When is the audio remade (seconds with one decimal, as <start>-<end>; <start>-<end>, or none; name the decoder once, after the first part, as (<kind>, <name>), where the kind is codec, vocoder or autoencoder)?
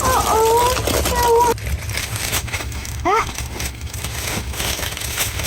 2.0-5.5 (autoencoder, DAC-VAE)